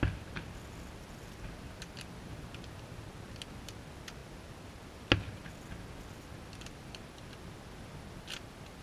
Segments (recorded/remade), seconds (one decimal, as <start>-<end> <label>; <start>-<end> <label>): 0.0-8.8 recorded

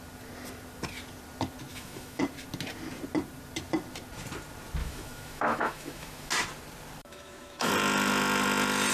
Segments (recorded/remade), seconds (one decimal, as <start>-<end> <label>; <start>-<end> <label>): 0.0-1.7 recorded; 1.7-2.2 remade; 2.2-4.8 recorded; 4.8-6.3 remade; 6.3-7.0 recorded; 7.0-7.7 remade; 7.7-8.9 recorded

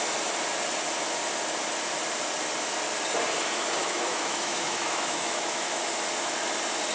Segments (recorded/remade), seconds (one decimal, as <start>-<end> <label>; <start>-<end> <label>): 0.0-3.8 recorded; 3.8-5.9 remade; 5.9-6.9 recorded

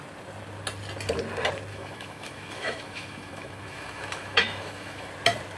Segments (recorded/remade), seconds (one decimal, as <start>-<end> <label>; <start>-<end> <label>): 0.0-1.7 recorded; 1.7-5.1 remade; 5.1-5.6 recorded

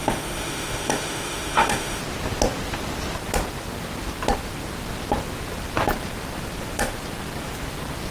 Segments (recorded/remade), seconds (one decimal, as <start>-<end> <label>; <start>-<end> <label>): 0.0-2.0 remade; 2.0-8.1 recorded

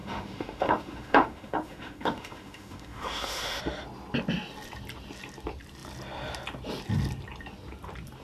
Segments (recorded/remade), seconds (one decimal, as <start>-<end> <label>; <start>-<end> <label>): 0.0-3.6 remade; 3.6-8.2 recorded

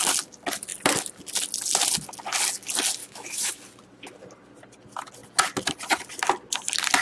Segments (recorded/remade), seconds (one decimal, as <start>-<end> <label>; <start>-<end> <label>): 0.0-3.0 recorded; 3.0-3.6 remade; 3.6-7.0 recorded